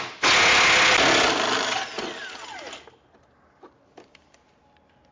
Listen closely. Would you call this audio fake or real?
real